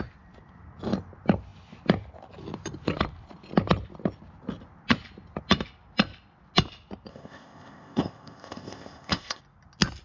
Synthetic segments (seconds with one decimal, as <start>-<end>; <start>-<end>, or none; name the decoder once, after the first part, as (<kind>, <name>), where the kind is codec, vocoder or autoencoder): 7.1-9.4 (codec, ZipCodec)